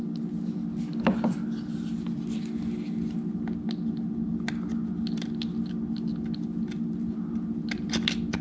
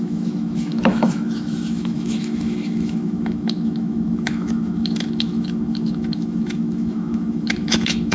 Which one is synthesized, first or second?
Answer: second